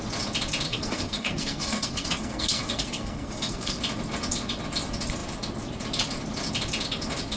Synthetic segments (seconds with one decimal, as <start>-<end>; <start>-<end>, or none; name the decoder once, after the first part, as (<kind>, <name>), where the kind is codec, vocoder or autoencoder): 0.7-3.8 (codec, SNAC)